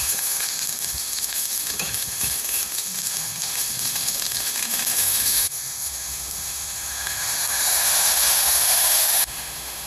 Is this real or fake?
fake